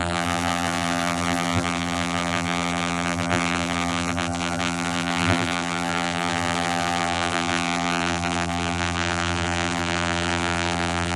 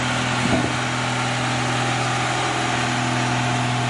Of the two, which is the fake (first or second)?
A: first